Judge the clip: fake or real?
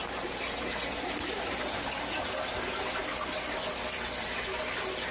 real